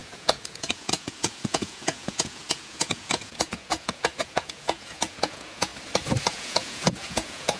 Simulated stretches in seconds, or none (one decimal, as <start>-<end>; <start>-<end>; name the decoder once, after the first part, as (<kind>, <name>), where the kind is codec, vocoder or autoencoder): 0.0-5.7 (vocoder, Vocos); 6.3-7.6